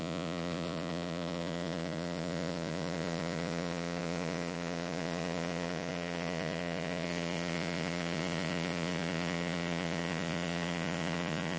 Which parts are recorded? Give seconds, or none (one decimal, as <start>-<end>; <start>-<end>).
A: none